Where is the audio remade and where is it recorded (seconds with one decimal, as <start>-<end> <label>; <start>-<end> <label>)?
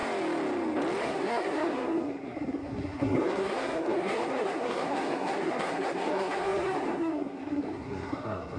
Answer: 0.0-1.0 recorded; 1.0-8.6 remade